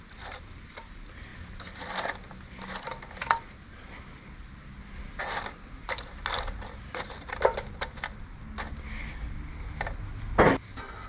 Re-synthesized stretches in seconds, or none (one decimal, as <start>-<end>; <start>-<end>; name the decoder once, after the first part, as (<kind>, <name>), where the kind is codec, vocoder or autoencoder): 1.3-4.0 (vocoder, BigVGAN v2)